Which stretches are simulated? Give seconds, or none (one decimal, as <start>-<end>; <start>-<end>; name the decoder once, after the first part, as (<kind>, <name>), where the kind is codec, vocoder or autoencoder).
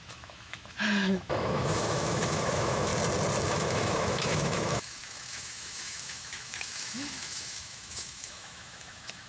0.0-2.9 (autoencoder, DAC-VAE); 3.5-9.3